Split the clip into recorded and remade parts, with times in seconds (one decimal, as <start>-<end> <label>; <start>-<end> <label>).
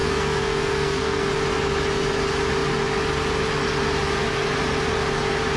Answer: 0.0-1.3 remade; 1.3-5.6 recorded